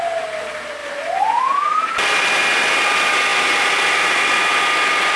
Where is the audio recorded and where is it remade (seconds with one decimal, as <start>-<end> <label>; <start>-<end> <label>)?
0.0-5.2 recorded